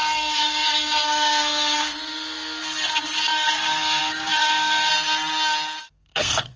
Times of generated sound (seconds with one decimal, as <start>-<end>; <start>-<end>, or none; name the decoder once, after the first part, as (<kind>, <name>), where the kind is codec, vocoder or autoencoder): 0.0-4.9 (codec, SNAC); 5.8-6.6